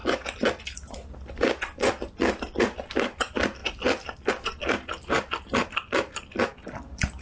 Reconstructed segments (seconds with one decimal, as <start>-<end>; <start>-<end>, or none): none